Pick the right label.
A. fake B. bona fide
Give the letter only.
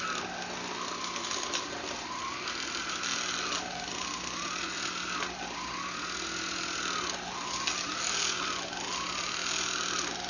B